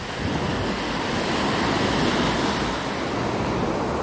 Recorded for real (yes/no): yes